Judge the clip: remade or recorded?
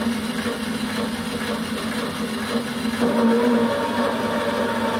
recorded